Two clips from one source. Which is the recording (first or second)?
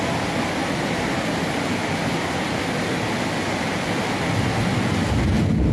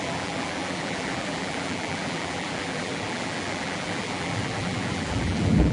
first